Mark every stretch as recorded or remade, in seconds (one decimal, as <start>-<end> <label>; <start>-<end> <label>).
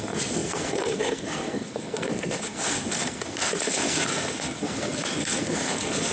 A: 0.0-6.1 remade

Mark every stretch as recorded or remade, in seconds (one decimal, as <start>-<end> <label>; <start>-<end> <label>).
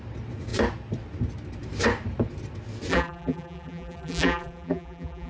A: 0.0-2.9 recorded; 2.9-5.3 remade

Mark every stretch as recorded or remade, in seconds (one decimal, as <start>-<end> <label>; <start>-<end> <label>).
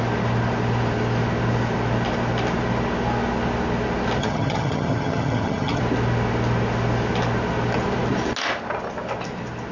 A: 0.0-4.2 recorded; 4.2-5.8 remade; 5.8-9.7 recorded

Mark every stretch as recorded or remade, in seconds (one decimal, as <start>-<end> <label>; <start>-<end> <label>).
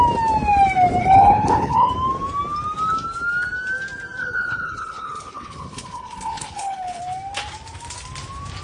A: 0.0-1.0 recorded; 1.0-1.9 remade; 1.9-4.2 recorded; 4.2-7.0 remade; 7.0-8.6 recorded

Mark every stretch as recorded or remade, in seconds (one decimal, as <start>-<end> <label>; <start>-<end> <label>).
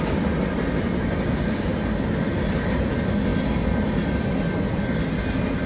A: 0.0-5.7 recorded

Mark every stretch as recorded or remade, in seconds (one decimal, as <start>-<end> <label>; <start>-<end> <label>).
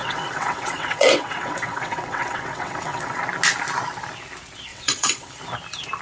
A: 0.0-3.2 remade; 3.2-4.7 recorded; 4.7-5.3 remade; 5.3-6.0 recorded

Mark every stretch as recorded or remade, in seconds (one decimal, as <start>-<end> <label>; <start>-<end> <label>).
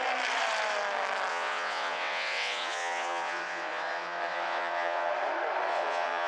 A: 0.0-1.3 recorded; 1.3-5.1 remade; 5.1-5.7 recorded; 5.7-6.3 remade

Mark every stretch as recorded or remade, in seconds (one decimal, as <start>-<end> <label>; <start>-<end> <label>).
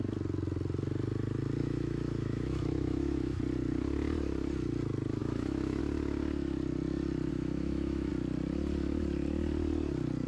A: 0.0-1.6 recorded; 1.6-3.4 remade; 3.4-5.2 recorded; 5.2-5.8 remade; 5.8-7.3 recorded; 7.3-8.1 remade; 8.1-10.3 recorded